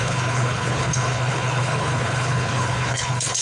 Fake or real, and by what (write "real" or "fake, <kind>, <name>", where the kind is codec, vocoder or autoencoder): fake, codec, HILCodec